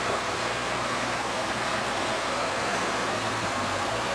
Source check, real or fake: fake